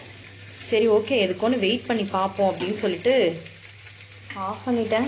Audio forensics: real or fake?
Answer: real